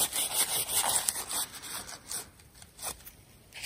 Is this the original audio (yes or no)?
yes